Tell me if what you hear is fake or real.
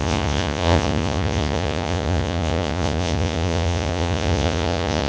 fake